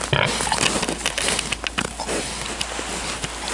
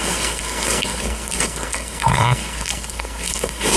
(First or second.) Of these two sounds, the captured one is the first